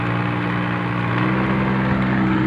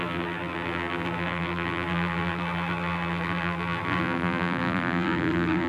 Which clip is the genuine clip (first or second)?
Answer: first